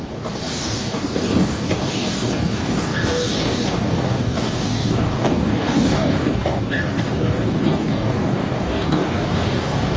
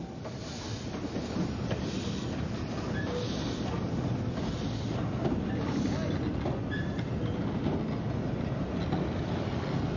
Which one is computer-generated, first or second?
first